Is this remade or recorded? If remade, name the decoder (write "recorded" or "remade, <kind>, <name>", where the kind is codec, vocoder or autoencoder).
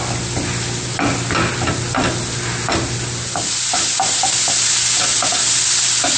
recorded